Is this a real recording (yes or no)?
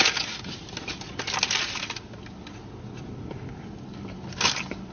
yes